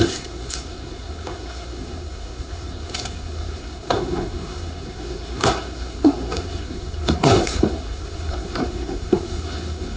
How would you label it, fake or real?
fake